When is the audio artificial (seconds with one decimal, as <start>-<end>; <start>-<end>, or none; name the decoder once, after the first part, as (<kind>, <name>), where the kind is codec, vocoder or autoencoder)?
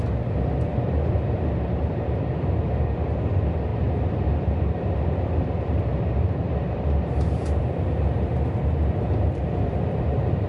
0.0-10.5 (vocoder, BigVGAN v2)